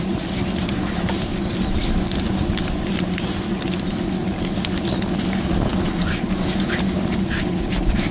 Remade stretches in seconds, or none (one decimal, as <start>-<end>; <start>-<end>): none